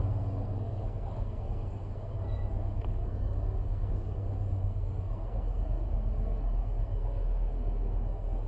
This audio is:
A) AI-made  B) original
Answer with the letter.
A